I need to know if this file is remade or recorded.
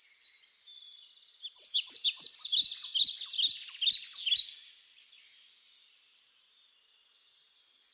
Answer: recorded